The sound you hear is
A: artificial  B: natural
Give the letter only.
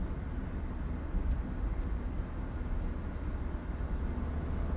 B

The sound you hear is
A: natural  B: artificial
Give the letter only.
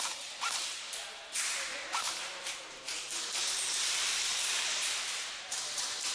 B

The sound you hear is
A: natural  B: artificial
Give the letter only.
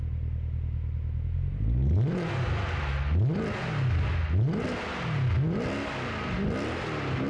A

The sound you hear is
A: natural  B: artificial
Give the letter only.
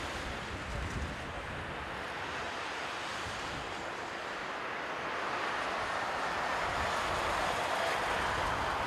A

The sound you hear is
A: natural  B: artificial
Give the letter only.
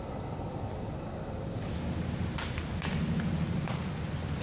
A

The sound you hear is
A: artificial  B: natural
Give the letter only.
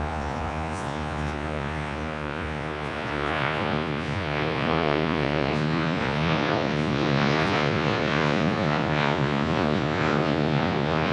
A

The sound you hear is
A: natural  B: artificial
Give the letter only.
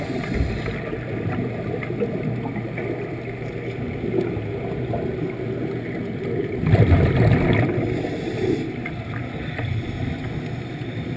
A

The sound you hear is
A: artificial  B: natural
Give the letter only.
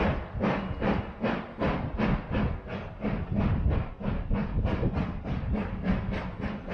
B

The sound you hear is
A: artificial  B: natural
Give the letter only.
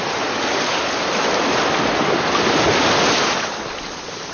B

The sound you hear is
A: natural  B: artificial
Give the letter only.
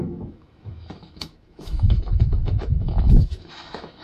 B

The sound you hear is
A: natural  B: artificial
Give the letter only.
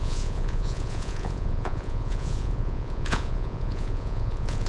B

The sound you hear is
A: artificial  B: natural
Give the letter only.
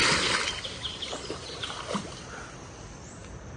A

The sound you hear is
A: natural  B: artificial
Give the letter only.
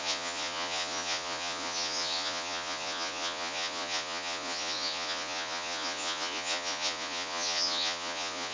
B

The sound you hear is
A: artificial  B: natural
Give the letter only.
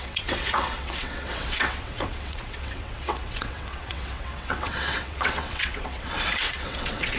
A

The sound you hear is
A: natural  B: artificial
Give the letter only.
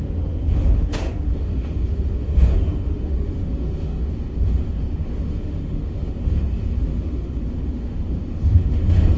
B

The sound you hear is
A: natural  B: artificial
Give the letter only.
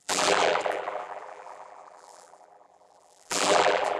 B